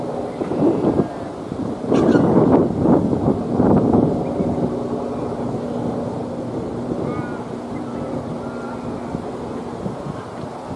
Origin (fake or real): real